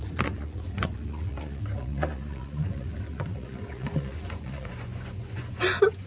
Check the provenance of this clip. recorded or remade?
remade